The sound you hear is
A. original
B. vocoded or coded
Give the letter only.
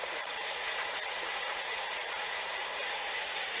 B